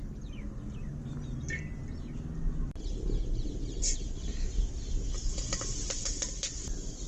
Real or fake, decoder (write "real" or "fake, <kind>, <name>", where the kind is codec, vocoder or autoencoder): real